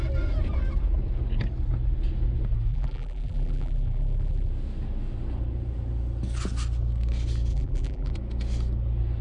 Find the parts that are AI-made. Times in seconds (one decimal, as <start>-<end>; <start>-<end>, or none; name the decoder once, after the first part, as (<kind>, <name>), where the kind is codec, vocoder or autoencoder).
2.7-4.5 (vocoder, BigVGAN v2); 7.5-8.1